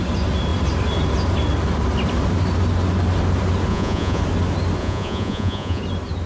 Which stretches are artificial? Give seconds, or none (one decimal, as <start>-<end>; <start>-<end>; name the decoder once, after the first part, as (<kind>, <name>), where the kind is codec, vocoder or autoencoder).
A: 3.7-4.2 (vocoder, Vocos); 4.8-5.8